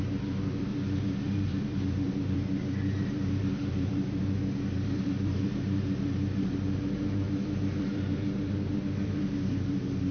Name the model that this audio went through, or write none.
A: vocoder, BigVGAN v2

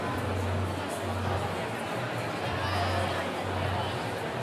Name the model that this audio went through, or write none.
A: none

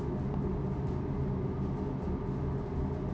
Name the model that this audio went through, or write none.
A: none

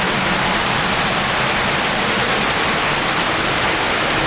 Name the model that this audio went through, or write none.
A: none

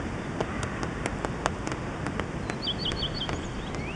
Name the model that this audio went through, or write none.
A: none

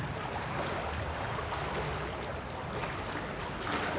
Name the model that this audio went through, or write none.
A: none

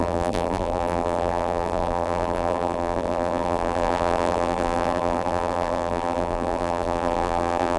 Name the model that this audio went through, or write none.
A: vocoder, BigVGAN v2